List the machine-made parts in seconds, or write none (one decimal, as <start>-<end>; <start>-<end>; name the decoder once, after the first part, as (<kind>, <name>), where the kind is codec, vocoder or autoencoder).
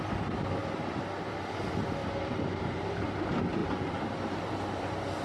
0.6-1.3 (vocoder, BigVGAN v2); 2.0-3.0